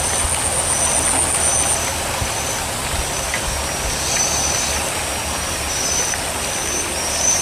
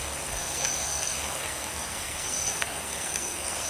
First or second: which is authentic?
first